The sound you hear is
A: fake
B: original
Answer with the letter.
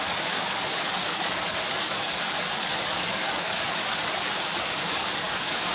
A